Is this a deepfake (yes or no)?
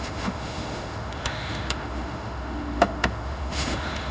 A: yes